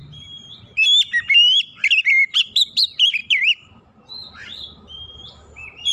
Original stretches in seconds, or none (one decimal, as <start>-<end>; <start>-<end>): 0.0-2.4